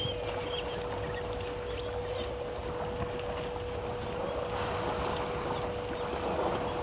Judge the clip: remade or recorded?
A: recorded